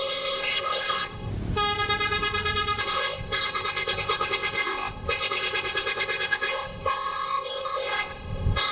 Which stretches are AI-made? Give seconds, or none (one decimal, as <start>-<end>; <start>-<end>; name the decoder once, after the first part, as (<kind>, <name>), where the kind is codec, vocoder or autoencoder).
0.0-1.3 (codec, ZipCodec); 2.8-8.7